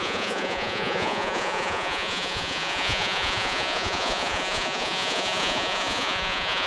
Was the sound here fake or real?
fake